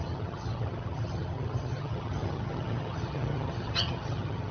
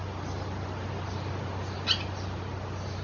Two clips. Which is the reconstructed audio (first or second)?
first